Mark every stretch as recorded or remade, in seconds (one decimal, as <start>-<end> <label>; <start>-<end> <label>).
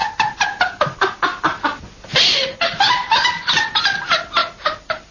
0.0-5.1 recorded